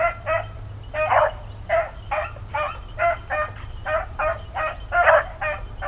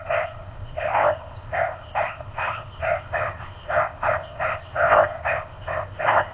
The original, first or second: first